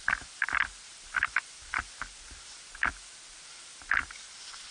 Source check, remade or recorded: recorded